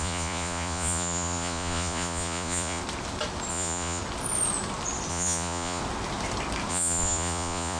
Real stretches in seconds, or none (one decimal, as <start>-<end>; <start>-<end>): 2.8-3.5; 4.0-5.1; 5.8-6.7